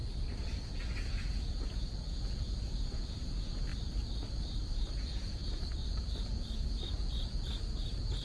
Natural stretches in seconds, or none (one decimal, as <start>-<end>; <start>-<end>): 0.0-0.7; 3.7-5.0